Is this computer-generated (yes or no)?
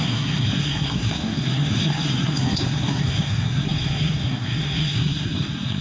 yes